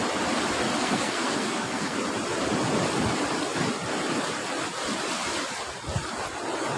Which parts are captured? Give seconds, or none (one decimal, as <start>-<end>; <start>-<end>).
0.0-0.8; 2.0-6.8